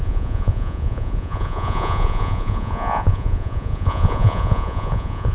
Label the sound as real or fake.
fake